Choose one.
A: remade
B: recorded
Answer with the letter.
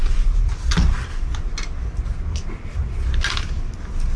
B